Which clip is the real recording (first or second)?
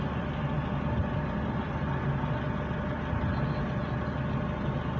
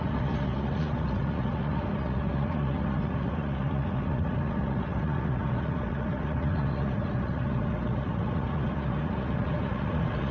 first